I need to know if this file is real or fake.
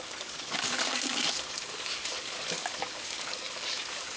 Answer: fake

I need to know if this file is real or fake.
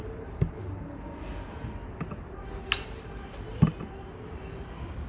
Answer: real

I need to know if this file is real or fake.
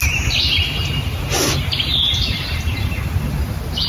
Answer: fake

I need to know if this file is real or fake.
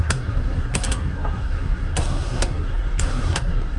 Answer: fake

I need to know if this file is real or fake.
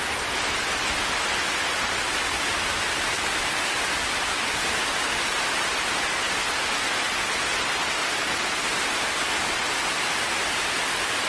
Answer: real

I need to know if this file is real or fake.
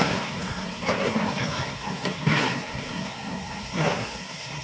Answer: fake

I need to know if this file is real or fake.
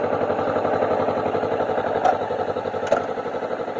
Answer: real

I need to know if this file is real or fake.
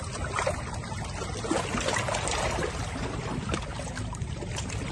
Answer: real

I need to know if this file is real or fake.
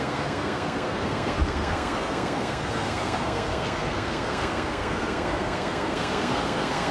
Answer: fake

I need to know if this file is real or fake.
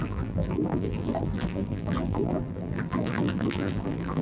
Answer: fake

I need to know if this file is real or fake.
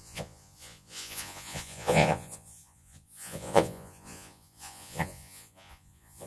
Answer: fake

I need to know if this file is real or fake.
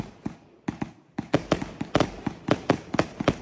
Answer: real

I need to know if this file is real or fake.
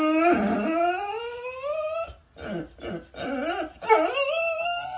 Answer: real